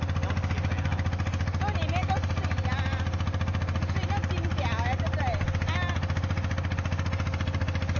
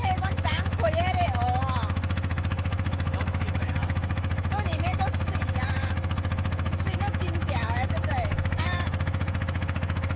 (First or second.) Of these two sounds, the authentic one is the first